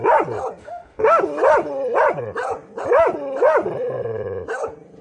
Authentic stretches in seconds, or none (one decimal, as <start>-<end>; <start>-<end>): 0.0-0.6; 1.2-5.0